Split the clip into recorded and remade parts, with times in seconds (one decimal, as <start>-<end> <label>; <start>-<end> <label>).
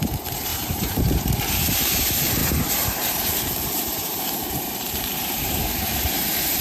0.0-6.6 remade